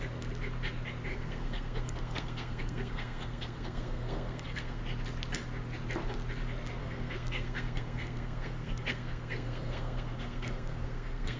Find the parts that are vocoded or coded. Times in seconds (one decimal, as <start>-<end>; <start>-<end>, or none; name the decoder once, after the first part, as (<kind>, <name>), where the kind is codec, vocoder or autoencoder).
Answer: 1.1-4.8 (codec, SNAC); 6.8-11.4